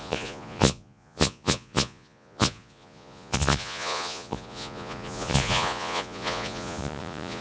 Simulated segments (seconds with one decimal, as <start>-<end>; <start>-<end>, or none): 0.0-7.4